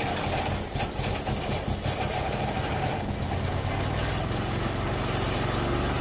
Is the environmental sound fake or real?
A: real